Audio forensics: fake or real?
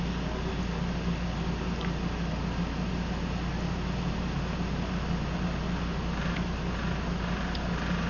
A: real